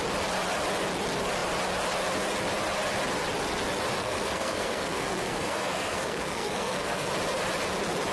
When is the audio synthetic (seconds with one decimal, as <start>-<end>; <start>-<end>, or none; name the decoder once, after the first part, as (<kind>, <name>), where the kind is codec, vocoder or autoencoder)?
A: 4.0-7.1 (codec, SNAC)

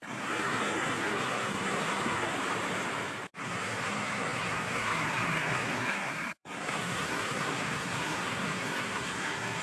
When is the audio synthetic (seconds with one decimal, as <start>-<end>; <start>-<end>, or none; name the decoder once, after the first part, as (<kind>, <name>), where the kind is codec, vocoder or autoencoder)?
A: 0.0-2.3 (codec, SNAC); 3.4-9.6